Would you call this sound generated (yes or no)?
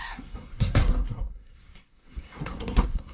yes